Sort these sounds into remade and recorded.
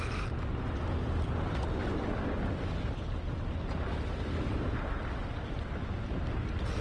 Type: recorded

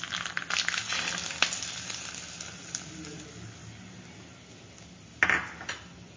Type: recorded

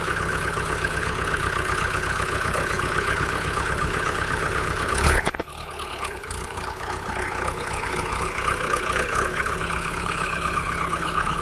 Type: remade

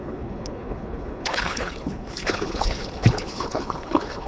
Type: remade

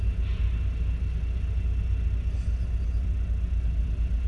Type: recorded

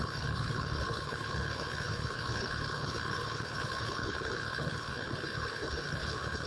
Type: remade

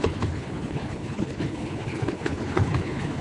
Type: remade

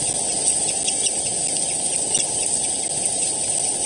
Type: recorded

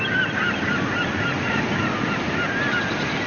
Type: recorded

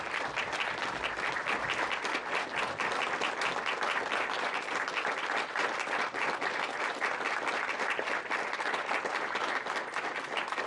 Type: recorded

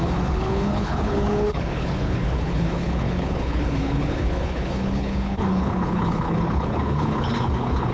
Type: remade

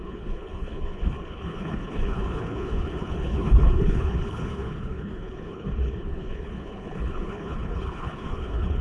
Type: remade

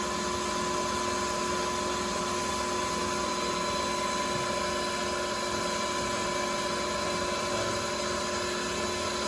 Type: recorded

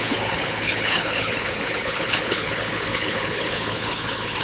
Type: remade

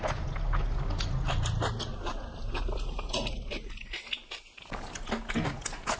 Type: recorded